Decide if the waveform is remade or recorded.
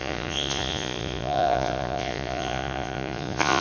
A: remade